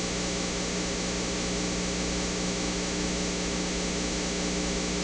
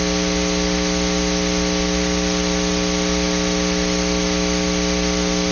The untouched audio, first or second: second